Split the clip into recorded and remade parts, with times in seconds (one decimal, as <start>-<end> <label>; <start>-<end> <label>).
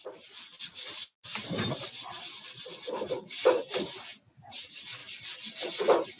0.0-6.2 recorded